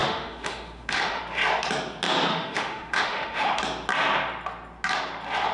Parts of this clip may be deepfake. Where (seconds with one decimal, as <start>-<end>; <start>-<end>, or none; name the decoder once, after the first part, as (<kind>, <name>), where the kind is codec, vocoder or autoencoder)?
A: 0.0-1.2 (autoencoder, DAC-VAE); 2.3-3.6